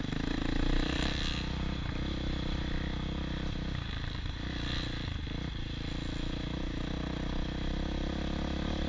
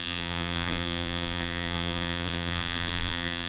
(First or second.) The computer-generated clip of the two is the second